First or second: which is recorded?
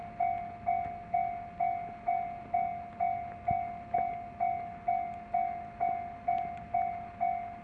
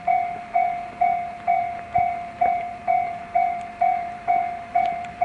first